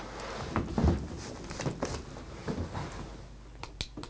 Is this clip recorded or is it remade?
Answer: recorded